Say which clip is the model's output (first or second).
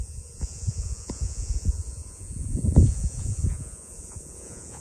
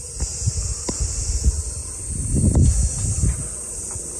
first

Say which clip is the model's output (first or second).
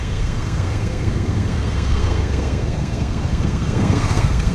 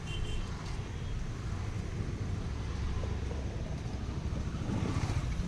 first